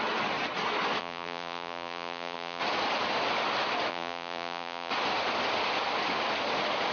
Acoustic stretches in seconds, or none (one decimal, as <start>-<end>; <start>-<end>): 0.0-1.0; 2.6-3.9; 4.9-6.9